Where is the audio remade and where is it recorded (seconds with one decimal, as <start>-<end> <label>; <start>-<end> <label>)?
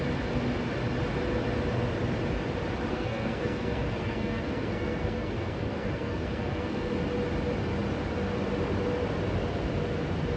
0.0-2.9 recorded; 2.9-6.9 remade; 6.9-10.4 recorded